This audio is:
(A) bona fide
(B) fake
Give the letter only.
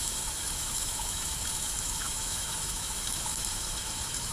B